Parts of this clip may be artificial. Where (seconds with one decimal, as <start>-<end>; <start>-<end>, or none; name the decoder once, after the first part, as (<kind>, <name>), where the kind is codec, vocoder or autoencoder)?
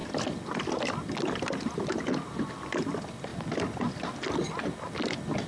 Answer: none